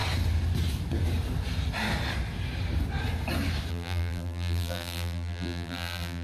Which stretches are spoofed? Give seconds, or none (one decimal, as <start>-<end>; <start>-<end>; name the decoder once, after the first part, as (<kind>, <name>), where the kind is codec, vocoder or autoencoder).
3.7-6.2 (vocoder, BigVGAN v2)